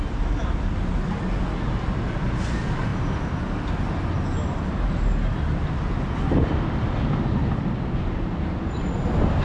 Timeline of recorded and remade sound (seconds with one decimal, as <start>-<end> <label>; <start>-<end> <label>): 0.0-9.4 recorded